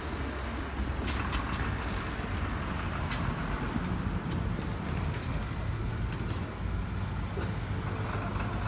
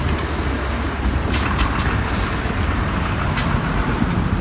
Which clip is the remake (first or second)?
second